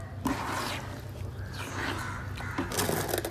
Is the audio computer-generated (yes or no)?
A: no